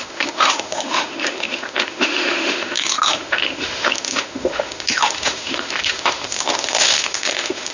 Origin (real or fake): fake